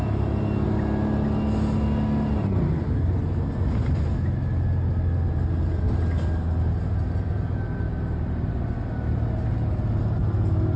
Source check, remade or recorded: recorded